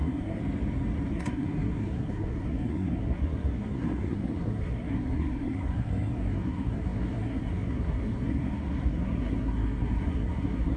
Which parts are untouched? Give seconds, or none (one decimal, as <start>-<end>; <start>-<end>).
0.4-1.1